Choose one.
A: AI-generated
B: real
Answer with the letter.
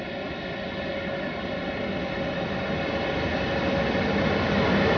B